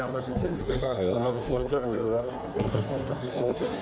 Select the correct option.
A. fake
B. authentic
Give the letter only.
A